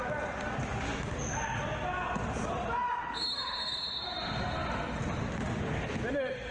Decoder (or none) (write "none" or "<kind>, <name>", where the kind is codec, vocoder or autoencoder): none